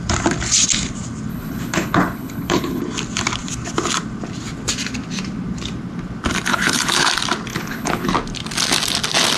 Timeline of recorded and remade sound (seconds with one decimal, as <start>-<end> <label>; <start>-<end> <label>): 0.0-1.3 recorded; 1.3-2.8 remade; 2.8-6.5 recorded; 6.5-7.1 remade; 7.1-7.5 recorded; 7.5-8.1 remade; 8.1-9.4 recorded